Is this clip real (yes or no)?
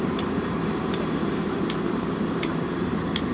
no